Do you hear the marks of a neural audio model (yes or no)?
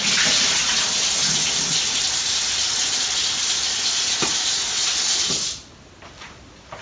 no